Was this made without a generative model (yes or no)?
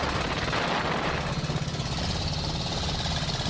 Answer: yes